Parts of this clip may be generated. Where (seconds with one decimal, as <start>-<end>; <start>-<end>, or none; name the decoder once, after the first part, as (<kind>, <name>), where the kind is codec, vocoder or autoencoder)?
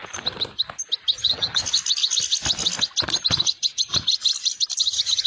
1.2-1.6 (vocoder, HiFi-GAN); 4.8-5.3